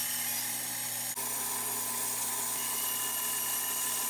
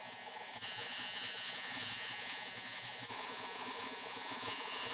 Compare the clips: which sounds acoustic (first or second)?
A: first